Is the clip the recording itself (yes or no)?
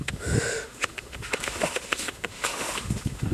no